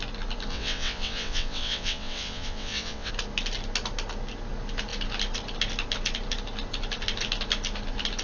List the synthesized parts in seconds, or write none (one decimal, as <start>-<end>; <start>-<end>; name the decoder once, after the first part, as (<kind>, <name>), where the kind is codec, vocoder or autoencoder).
0.5-3.1 (vocoder, WaveNeXt)